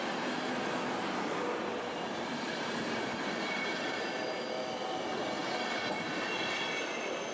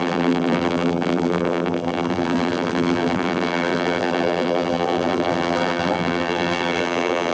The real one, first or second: first